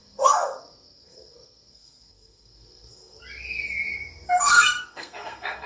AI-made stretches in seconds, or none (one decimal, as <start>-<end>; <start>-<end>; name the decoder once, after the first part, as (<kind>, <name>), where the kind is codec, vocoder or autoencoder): 0.0-3.2 (codec, SNAC); 4.4-5.7